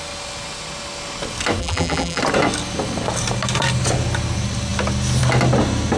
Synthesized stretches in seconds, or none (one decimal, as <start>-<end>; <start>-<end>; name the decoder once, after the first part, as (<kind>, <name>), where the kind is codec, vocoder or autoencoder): 1.6-2.2 (vocoder, BigVGAN v2)